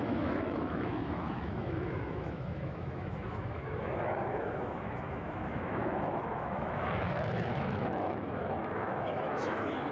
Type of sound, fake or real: fake